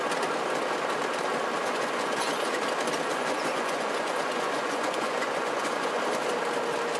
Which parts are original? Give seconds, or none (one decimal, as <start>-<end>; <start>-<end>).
0.0-1.6; 2.6-3.1; 6.0-7.0